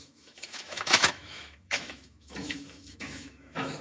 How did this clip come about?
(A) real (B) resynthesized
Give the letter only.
B